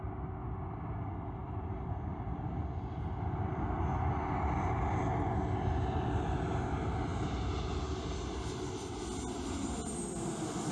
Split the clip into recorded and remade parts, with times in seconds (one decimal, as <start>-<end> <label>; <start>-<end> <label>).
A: 0.0-10.7 recorded